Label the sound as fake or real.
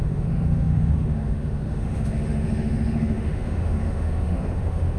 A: fake